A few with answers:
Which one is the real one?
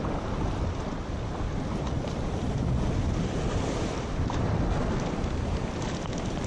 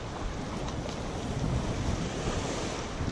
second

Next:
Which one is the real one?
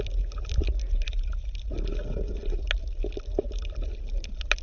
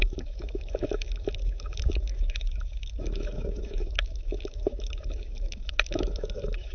first